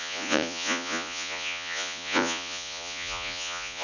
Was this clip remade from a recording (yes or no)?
yes